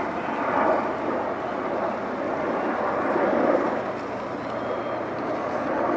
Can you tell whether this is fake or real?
real